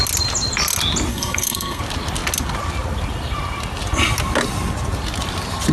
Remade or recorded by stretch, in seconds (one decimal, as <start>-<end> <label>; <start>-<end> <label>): 0.0-1.1 recorded; 1.1-1.8 remade; 1.8-5.7 recorded

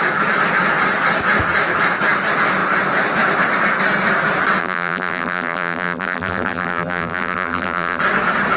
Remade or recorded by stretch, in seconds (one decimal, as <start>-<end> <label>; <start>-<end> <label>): 0.0-4.6 recorded; 4.6-8.0 remade; 8.0-8.6 recorded

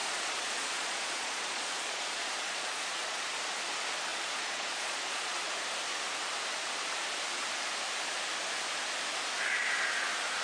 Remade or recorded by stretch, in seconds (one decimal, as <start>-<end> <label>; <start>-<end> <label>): 0.0-3.3 remade; 3.3-4.1 recorded; 4.1-5.5 remade; 5.5-10.4 recorded